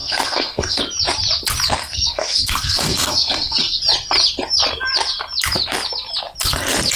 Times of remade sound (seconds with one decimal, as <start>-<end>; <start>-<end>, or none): 0.0-0.8; 1.8-3.8